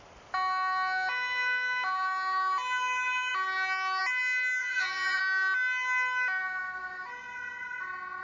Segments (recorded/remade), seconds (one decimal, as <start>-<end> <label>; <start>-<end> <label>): 0.0-4.6 recorded; 4.6-5.2 remade; 5.2-8.2 recorded